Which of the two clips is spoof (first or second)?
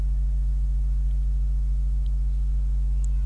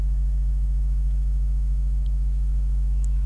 second